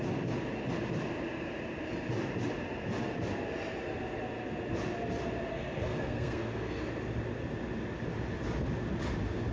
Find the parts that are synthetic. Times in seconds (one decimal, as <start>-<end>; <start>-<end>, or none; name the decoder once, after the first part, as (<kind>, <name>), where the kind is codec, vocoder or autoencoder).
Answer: 5.5-6.8 (codec, SNAC)